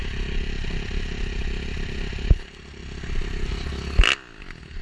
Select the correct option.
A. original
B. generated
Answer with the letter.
A